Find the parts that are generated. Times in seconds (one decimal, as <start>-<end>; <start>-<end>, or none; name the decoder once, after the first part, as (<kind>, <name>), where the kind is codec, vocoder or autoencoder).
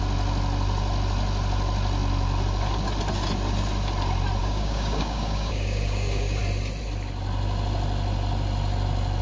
4.4-6.4 (codec, DAC)